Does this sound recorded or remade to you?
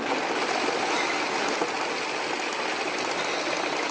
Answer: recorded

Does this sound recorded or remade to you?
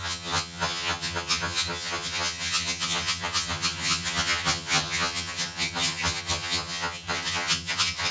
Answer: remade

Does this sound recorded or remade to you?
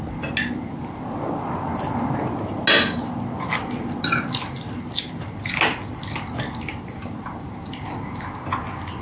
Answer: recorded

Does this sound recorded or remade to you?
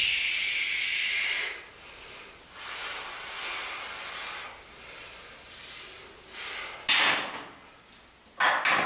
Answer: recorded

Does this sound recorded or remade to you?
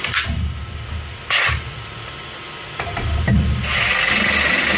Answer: recorded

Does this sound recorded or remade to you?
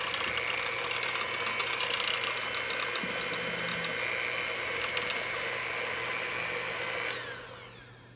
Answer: recorded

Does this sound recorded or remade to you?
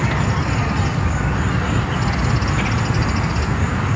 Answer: recorded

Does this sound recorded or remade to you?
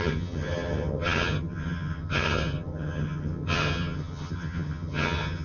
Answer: remade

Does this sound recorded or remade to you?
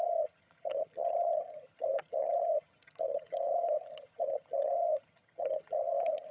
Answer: remade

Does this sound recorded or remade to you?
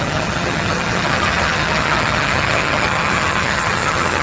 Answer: remade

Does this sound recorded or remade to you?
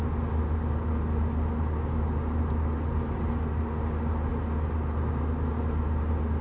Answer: recorded